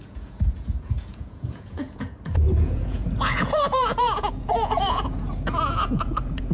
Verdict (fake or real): fake